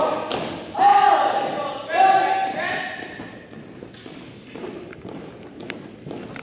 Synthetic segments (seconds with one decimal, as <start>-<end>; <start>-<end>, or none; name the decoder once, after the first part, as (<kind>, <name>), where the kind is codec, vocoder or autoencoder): none